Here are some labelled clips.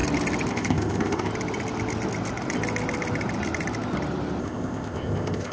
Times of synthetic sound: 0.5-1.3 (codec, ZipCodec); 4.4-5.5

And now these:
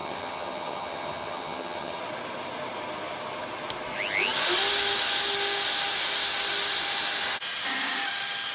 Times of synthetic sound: 0.0-2.0 (vocoder, HiFi-GAN)

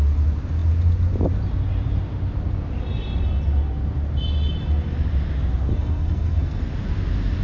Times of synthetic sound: 5.7-6.6 (codec, SNAC)

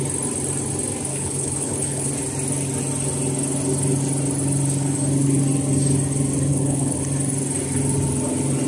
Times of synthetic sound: 1.1-2.1 (codec, HILCodec); 6.5-7.0

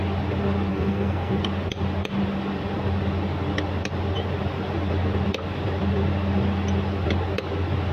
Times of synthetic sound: 0.7-1.4 (codec, SNAC)

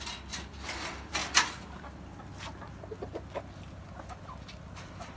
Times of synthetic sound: none

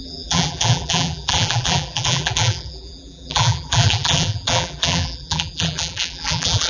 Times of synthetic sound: 0.0-6.7 (vocoder, BigVGAN v2)

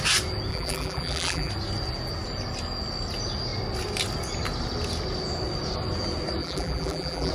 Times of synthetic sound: 0.5-1.5 (vocoder, BigVGAN v2); 6.4-7.3